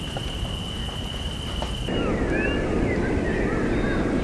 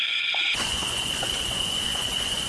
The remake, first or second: second